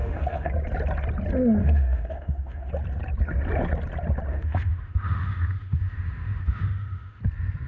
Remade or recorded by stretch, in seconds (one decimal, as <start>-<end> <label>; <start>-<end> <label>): 0.0-0.5 remade; 0.5-1.6 recorded; 1.6-2.7 remade; 2.7-4.3 recorded; 4.3-7.2 remade; 7.2-7.7 recorded